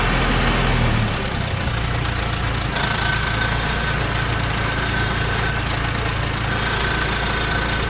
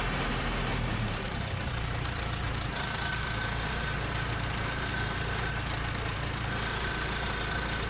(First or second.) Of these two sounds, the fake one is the second